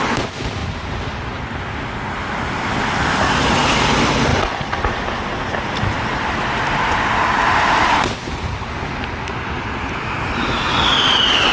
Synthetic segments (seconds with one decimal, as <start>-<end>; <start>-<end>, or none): none